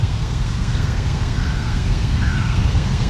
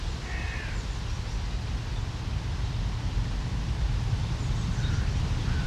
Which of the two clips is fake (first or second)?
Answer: first